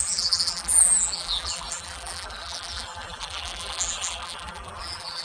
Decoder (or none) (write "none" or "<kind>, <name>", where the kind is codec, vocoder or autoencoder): vocoder, BigVGAN v2